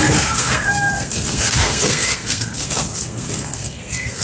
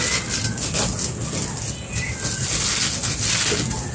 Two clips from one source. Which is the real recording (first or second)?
second